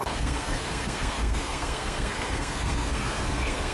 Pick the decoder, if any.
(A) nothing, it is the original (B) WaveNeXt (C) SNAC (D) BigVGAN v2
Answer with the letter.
C